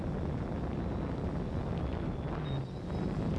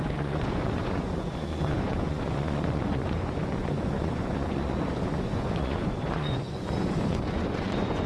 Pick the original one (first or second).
first